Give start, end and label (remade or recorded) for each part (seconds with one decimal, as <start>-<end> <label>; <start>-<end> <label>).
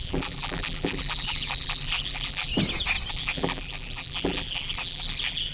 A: 0.0-2.5 remade; 2.5-3.1 recorded; 3.1-5.5 remade